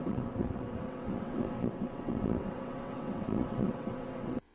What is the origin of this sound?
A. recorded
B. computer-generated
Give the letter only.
B